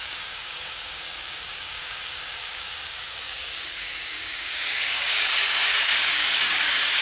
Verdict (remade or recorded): remade